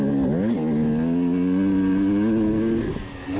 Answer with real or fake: real